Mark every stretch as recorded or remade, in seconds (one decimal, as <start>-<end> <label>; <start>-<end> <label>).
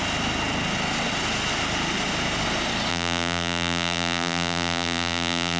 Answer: 0.0-2.9 recorded; 2.9-5.6 remade